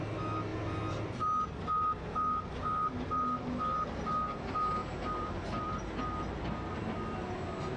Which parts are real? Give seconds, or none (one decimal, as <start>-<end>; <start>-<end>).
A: 0.0-4.8; 5.8-7.8